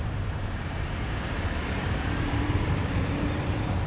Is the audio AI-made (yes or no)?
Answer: yes